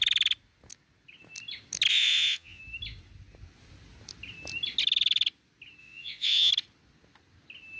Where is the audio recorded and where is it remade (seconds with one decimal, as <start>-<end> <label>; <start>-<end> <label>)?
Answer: 0.0-1.9 recorded; 1.9-2.6 remade; 2.6-5.8 recorded; 5.8-6.5 remade; 6.5-7.8 recorded